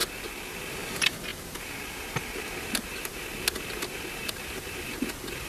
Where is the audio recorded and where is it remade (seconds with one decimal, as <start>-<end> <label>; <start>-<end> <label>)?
0.0-5.5 recorded